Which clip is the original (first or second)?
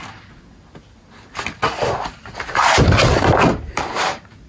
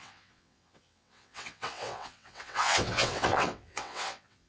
first